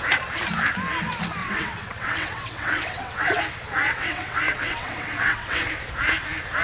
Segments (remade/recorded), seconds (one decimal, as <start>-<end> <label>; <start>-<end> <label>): 0.0-1.4 recorded; 1.4-3.4 remade; 3.4-3.8 recorded; 3.8-5.7 remade; 5.7-6.6 recorded